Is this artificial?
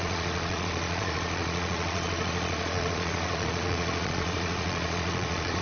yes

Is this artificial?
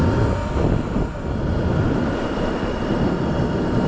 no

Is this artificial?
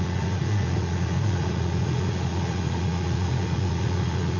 yes